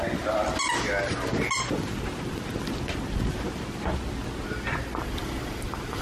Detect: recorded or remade recorded